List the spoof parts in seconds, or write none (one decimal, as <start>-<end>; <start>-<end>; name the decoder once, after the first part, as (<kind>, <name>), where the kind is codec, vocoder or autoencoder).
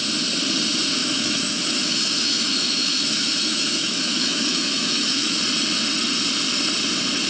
1.0-5.4 (autoencoder, DAC-VAE)